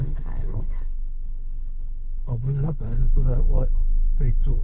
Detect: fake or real fake